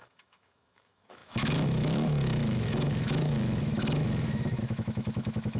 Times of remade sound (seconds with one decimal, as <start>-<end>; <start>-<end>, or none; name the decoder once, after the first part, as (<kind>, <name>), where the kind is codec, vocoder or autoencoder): 0.0-5.6 (autoencoder, DAC-VAE)